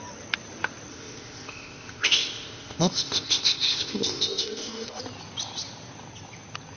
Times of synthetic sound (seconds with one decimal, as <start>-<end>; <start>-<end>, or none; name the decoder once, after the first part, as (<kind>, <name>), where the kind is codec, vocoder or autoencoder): 0.9-5.0 (codec, ZipCodec)